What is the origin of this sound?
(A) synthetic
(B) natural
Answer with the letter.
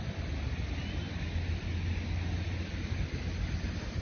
B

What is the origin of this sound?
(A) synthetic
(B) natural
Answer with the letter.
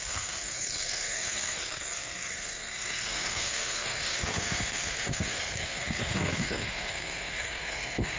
A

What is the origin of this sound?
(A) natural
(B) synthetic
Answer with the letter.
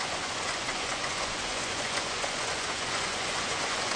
B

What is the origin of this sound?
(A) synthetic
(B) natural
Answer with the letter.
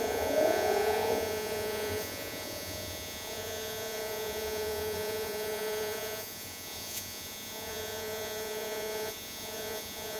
A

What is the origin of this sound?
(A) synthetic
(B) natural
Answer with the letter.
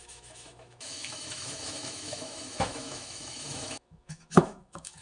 A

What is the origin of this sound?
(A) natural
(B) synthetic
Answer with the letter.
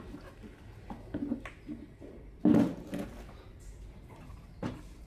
A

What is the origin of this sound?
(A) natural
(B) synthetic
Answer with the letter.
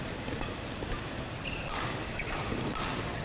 A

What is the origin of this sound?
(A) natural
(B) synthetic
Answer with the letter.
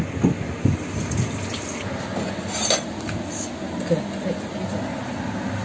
A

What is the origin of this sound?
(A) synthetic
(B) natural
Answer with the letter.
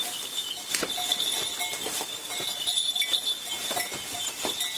B